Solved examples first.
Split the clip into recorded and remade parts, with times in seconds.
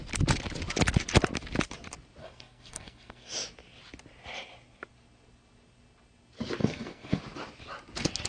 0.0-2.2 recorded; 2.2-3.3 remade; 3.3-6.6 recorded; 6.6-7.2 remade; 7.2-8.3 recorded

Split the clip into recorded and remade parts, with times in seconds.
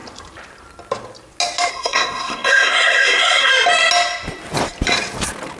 0.0-1.7 recorded; 1.7-3.5 remade; 3.5-5.6 recorded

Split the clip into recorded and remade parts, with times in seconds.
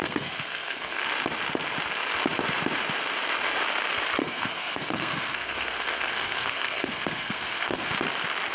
0.0-1.0 remade; 1.0-4.2 recorded; 4.2-7.9 remade; 7.9-8.5 recorded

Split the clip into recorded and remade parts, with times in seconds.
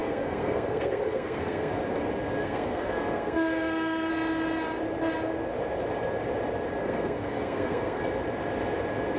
0.0-1.7 remade; 1.7-2.4 recorded; 2.4-4.1 remade; 4.1-6.8 recorded; 6.8-8.0 remade; 8.0-9.2 recorded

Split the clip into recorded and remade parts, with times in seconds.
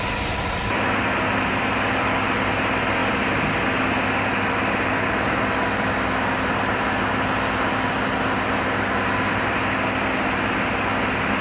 0.0-11.4 recorded